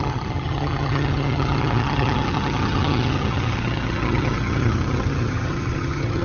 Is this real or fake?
fake